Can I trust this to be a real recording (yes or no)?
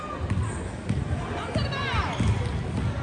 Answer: yes